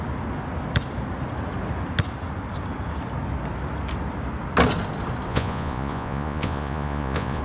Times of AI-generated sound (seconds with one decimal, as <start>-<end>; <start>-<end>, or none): 5.3-7.4